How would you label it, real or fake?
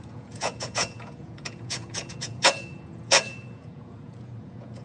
fake